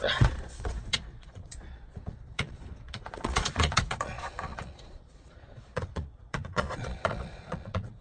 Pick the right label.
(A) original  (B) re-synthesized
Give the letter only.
B